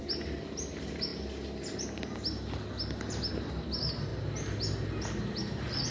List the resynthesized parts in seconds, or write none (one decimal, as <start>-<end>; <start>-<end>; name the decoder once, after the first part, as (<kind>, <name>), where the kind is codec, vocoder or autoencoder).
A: none

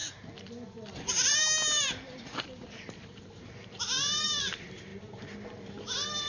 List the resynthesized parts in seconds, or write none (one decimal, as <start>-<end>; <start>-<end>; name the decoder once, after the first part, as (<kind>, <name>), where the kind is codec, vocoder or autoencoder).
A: 0.0-4.9 (vocoder, BigVGAN v2)

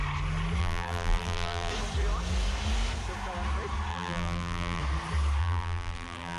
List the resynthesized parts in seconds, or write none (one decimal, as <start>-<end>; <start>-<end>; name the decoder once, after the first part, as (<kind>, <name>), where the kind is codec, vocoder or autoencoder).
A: 0.6-1.7 (vocoder, BigVGAN v2); 3.9-4.8; 5.4-6.4

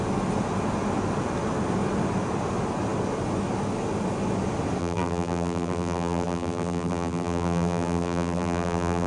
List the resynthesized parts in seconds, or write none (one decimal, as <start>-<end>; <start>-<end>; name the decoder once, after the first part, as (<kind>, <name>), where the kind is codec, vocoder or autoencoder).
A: 4.8-9.1 (vocoder, BigVGAN v2)

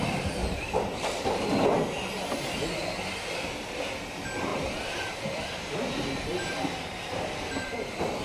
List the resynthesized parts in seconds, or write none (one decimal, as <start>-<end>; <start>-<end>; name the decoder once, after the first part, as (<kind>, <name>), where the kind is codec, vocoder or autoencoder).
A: 4.5-8.2 (vocoder, BigVGAN v2)

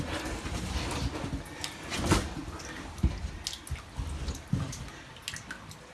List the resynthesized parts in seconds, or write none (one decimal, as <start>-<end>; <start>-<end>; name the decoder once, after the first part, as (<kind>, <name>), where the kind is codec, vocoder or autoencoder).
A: none

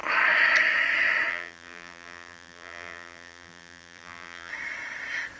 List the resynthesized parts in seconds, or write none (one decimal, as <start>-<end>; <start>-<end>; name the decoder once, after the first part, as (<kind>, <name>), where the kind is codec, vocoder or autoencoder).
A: 1.3-4.5 (vocoder, BigVGAN v2)